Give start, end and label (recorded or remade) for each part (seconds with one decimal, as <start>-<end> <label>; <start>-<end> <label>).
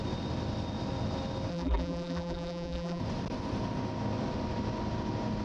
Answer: 0.0-1.5 recorded; 1.5-3.0 remade; 3.0-5.4 recorded